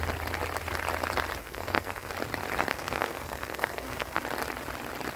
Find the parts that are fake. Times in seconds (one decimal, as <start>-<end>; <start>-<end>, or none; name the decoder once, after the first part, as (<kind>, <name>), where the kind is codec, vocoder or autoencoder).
1.4-2.1 (codec, SNAC); 2.7-4.2